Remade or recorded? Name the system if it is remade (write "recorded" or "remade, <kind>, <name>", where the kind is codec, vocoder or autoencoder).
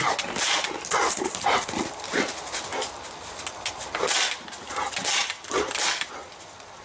recorded